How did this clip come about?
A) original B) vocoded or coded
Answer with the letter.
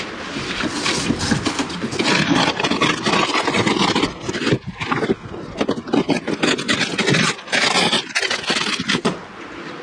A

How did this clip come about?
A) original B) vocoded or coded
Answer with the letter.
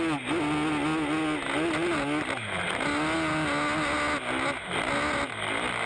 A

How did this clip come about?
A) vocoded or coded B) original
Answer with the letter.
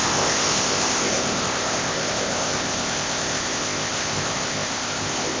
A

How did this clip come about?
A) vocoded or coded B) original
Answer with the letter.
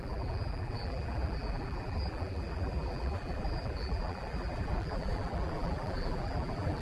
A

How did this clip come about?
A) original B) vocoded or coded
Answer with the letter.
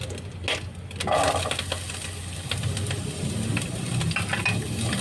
A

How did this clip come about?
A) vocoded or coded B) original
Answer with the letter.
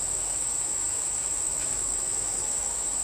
A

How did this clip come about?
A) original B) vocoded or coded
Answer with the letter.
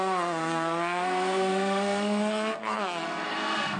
B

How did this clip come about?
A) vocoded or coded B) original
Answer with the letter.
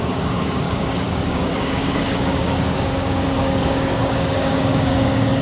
A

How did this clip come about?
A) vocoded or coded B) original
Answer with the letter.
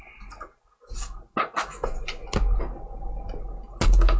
B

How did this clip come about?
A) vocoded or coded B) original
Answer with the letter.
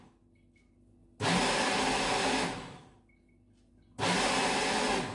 B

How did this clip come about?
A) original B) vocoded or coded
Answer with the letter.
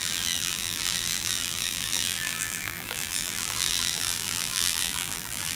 B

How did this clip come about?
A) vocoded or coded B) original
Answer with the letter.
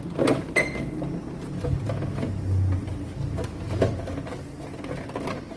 B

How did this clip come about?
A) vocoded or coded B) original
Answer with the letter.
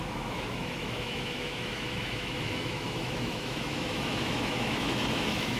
A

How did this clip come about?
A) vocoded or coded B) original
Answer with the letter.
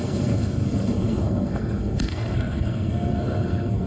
A